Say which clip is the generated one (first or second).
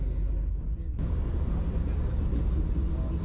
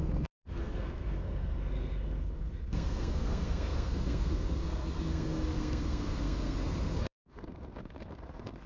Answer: second